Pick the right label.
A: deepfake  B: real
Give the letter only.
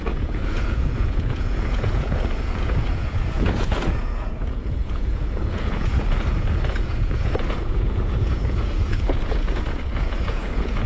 A